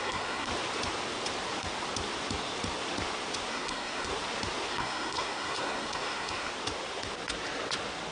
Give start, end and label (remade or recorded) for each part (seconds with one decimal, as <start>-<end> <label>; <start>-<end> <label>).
0.0-0.5 remade; 0.5-3.5 recorded; 3.5-4.1 remade; 4.1-4.7 recorded; 4.7-6.5 remade; 6.5-8.1 recorded